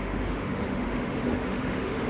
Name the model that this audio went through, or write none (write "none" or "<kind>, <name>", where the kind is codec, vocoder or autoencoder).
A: autoencoder, DAC-VAE